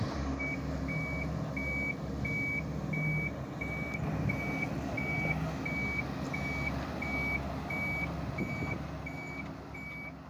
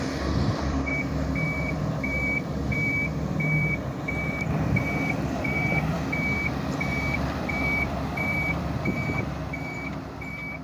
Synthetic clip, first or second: second